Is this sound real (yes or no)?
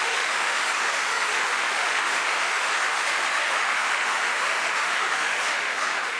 no